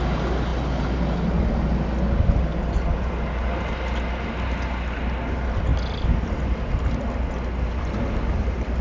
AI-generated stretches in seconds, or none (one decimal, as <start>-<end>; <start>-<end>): none